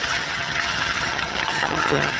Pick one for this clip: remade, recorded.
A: remade